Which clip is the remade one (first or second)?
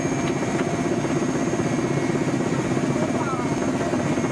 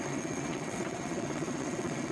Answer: second